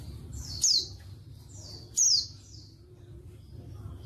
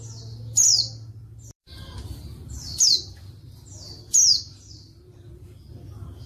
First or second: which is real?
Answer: first